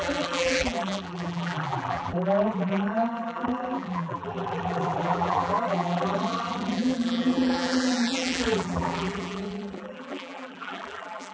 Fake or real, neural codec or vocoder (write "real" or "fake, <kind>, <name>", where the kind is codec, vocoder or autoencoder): fake, vocoder, BigVGAN v2